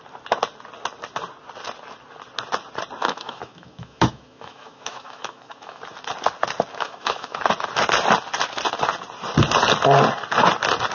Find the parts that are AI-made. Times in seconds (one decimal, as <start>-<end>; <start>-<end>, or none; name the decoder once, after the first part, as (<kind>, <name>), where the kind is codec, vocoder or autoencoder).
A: 3.0-5.8 (autoencoder, DAC-VAE); 6.7-7.4